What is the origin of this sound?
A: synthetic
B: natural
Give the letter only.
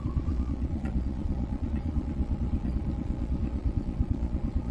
A